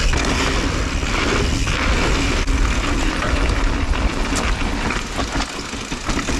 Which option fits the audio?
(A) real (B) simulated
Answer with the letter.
A